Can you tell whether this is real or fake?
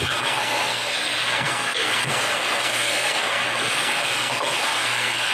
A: fake